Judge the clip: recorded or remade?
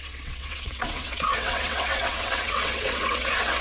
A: remade